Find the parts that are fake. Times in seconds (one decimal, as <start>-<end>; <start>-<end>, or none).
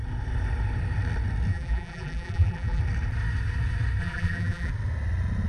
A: 1.5-2.8; 4.0-4.7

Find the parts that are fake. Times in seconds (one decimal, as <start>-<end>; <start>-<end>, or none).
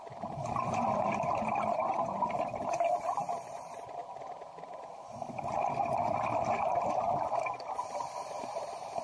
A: 0.0-0.4; 1.8-4.0; 8.3-9.0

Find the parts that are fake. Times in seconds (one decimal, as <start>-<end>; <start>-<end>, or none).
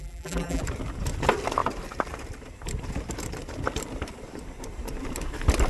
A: 0.0-0.6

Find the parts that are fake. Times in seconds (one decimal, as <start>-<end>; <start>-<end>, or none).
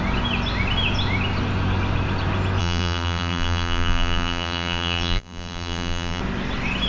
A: 2.6-6.2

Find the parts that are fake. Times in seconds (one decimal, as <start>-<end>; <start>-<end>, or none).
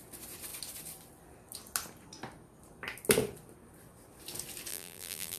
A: 4.7-5.4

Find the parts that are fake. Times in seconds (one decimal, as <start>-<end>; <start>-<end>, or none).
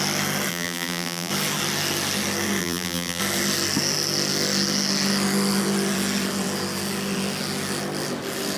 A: 0.5-1.3; 2.6-3.2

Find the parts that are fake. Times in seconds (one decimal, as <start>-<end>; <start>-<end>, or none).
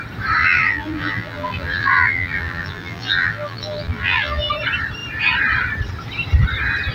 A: 0.4-4.5